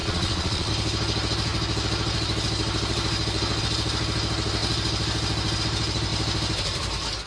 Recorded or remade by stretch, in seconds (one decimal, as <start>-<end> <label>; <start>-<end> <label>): 0.0-0.7 remade; 0.7-7.3 recorded